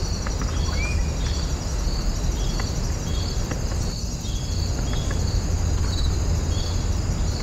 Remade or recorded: recorded